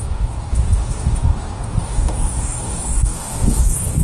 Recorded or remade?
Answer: remade